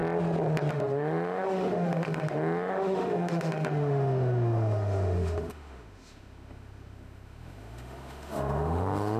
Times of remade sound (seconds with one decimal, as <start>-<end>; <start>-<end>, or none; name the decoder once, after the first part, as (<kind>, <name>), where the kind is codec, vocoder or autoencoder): 0.7-9.2 (autoencoder, DAC-VAE)